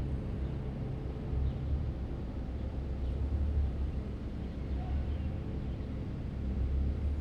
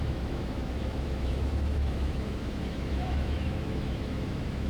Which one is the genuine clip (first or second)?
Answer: first